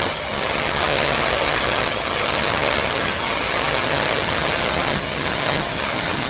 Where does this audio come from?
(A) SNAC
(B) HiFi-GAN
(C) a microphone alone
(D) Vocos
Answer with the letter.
B